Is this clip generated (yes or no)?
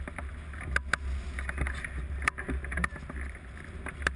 no